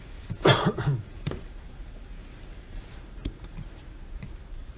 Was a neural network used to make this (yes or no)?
yes